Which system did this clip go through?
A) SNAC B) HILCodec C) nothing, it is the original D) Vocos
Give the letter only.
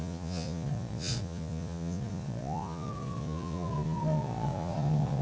D